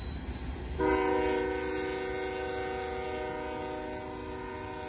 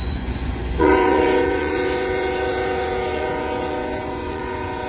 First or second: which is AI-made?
second